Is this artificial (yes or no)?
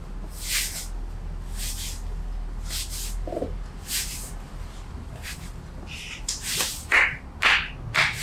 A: no